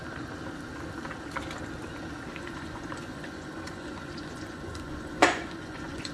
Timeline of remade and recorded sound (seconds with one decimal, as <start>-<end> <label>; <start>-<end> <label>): 0.0-2.3 recorded; 2.3-6.1 remade